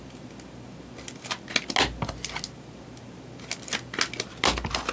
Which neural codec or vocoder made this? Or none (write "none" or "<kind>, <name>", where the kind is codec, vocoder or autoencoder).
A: none